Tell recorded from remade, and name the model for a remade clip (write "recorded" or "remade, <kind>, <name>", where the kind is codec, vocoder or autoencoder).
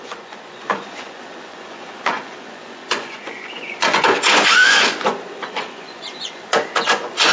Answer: remade, vocoder, Vocos